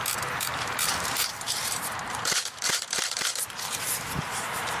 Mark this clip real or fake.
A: fake